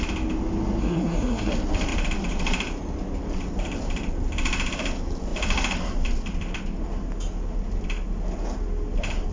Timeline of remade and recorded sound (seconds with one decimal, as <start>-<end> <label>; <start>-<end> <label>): 0.0-0.8 recorded; 0.8-1.5 remade; 1.5-9.3 recorded